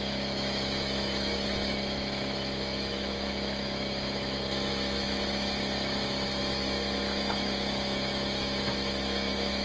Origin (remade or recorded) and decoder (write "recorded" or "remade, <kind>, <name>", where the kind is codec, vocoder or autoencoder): remade, autoencoder, DAC-VAE